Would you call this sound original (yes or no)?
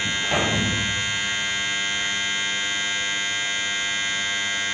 yes